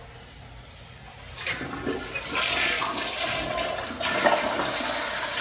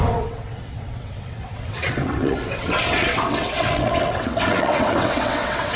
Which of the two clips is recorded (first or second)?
first